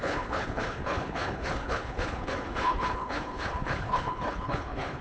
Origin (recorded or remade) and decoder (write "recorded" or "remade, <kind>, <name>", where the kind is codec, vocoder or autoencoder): remade, codec, HILCodec